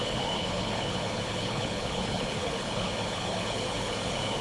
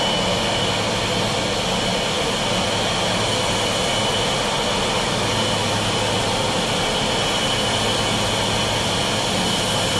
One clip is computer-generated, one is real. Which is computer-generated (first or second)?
first